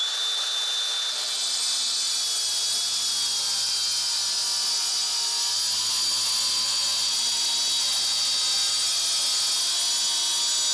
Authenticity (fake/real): real